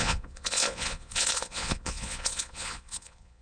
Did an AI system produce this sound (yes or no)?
yes